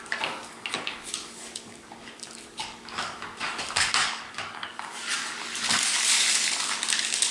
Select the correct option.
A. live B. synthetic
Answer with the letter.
B